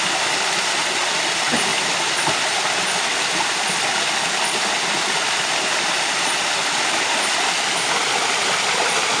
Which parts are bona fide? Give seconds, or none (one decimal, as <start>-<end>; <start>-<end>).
0.0-9.2